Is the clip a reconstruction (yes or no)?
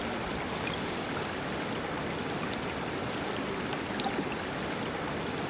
no